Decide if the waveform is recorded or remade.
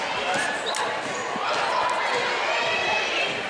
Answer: recorded